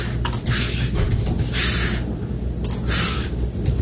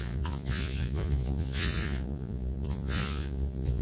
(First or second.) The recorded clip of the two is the first